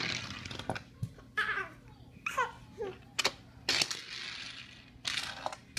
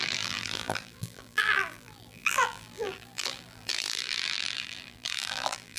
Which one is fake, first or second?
second